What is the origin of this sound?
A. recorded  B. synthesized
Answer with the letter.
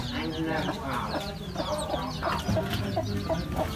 A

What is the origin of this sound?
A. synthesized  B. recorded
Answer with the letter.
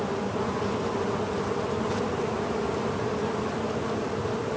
B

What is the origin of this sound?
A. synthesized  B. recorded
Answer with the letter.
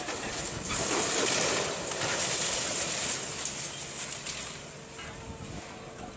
B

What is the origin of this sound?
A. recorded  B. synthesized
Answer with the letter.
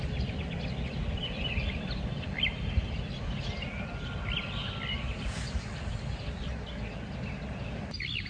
A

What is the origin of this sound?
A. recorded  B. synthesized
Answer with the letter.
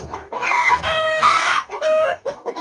B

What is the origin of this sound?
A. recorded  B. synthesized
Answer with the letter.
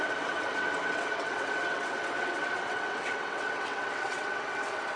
B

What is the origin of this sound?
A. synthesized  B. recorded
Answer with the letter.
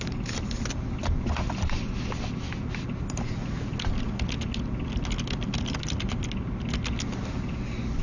B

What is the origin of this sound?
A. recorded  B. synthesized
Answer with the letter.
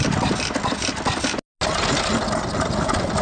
A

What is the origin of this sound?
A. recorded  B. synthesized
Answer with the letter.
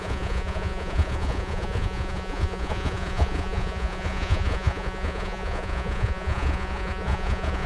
B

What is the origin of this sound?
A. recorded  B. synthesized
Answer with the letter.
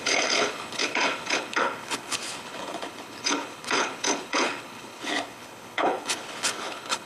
B